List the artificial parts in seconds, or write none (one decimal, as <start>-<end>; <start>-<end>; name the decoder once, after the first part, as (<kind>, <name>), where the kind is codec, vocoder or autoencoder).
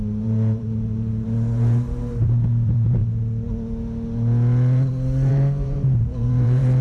0.0-3.0 (vocoder, BigVGAN v2); 5.3-6.8